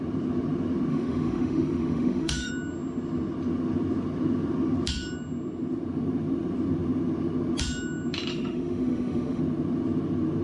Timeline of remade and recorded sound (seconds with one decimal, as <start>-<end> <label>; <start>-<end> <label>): 0.0-0.9 recorded; 0.9-2.5 remade; 2.5-8.3 recorded; 8.3-9.4 remade; 9.4-10.4 recorded